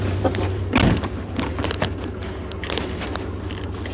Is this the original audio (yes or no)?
yes